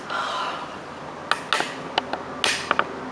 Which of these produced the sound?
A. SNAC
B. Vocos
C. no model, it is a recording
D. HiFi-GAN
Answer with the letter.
C